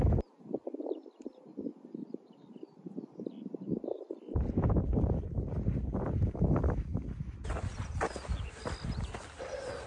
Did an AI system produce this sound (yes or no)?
no